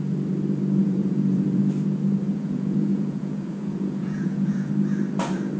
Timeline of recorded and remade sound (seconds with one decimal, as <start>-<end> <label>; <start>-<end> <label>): 0.0-0.8 recorded; 0.8-1.6 remade; 1.6-2.3 recorded; 2.3-4.7 remade; 4.7-5.6 recorded